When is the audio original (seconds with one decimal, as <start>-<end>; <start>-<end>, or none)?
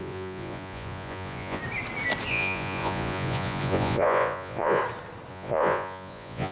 1.6-2.3; 4.8-5.3